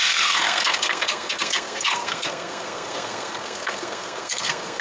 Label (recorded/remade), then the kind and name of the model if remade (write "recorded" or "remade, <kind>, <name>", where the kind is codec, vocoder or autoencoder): remade, codec, SNAC